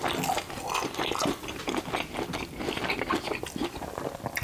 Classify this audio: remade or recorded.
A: recorded